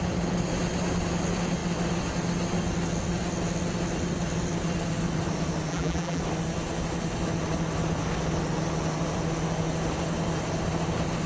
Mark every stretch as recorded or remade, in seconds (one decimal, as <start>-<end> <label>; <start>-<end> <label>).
0.0-5.7 recorded; 5.7-6.2 remade; 6.2-11.3 recorded